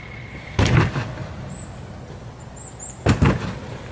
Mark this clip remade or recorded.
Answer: recorded